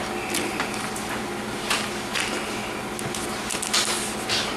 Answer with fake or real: real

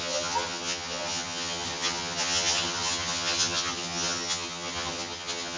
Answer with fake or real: fake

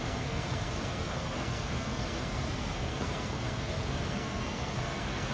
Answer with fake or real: fake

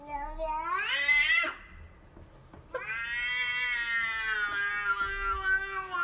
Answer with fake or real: real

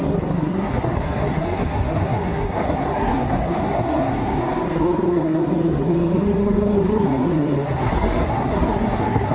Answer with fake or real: fake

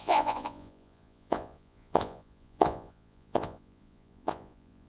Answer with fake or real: fake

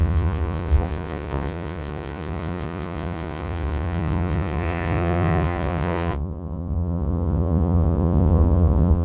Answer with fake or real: fake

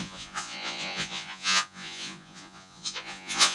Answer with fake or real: fake